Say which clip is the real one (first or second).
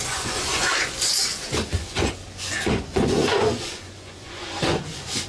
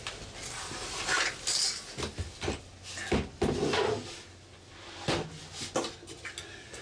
second